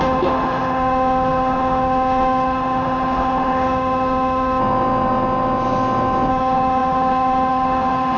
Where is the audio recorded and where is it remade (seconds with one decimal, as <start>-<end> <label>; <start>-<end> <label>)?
0.0-4.6 remade; 4.6-6.3 recorded; 6.3-8.2 remade